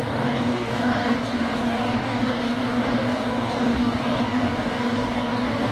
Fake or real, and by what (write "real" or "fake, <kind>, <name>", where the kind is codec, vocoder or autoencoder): fake, codec, DAC